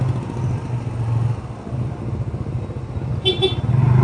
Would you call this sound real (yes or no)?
yes